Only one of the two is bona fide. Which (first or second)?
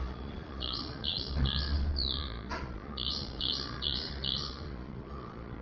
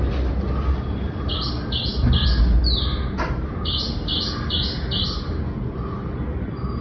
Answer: second